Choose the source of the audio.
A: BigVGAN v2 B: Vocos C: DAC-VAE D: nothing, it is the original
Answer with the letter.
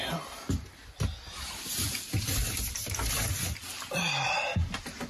D